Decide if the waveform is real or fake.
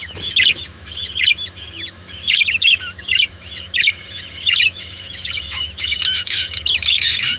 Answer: fake